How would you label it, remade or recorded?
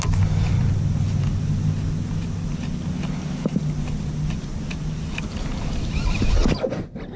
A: recorded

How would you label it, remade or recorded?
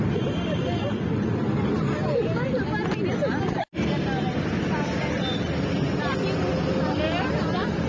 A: recorded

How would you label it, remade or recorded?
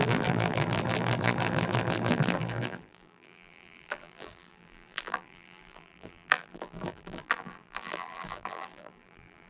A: remade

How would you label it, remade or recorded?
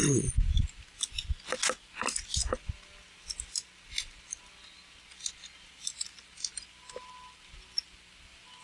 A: recorded